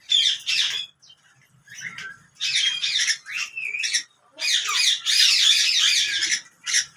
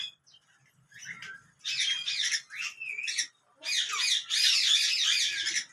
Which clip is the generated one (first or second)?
first